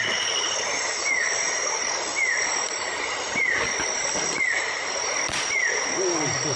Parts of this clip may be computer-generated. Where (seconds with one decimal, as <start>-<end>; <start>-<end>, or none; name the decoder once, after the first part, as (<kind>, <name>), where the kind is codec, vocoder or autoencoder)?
none